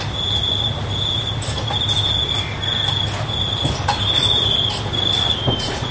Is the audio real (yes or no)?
yes